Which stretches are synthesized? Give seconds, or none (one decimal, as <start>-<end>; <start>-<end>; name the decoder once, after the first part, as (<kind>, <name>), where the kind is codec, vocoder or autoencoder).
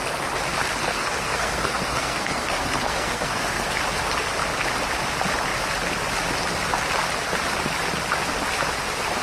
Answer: 0.8-3.8 (codec, SNAC)